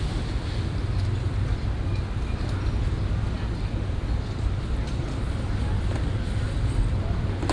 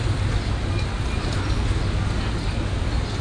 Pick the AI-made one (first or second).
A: first